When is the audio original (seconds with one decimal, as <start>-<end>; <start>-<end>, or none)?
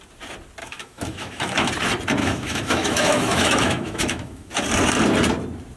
0.0-0.6; 1.7-2.2; 4.5-5.8